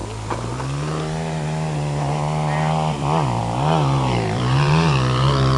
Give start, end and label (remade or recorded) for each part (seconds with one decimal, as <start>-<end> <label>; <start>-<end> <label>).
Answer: 0.0-3.4 recorded; 3.4-5.6 remade

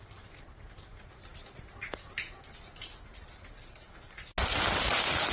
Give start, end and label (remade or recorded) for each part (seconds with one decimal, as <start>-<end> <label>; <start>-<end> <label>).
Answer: 0.0-5.3 recorded

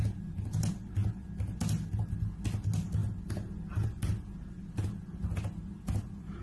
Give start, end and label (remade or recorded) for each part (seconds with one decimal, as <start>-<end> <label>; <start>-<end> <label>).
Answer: 0.0-6.4 recorded

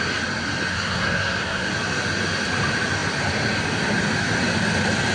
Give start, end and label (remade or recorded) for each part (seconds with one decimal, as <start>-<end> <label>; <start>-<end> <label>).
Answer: 0.0-0.7 recorded; 0.7-1.7 remade; 1.7-5.1 recorded

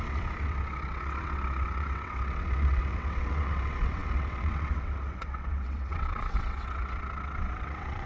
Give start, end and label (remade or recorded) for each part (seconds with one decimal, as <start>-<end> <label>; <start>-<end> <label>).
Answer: 0.0-8.1 remade

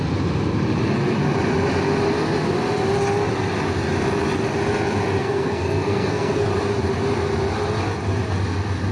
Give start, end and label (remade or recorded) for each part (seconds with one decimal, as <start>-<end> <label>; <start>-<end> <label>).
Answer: 0.0-5.2 recorded; 5.2-6.5 remade; 6.5-8.9 recorded

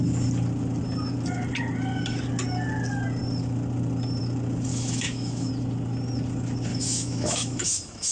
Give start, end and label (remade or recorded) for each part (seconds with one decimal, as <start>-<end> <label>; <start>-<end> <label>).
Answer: 0.0-4.7 recorded; 4.7-5.5 remade; 5.5-6.7 recorded; 6.7-8.1 remade

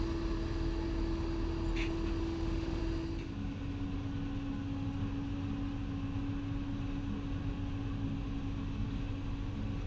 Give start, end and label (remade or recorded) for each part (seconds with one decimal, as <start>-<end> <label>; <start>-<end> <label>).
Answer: 0.0-2.2 recorded; 2.2-2.8 remade; 2.8-9.9 recorded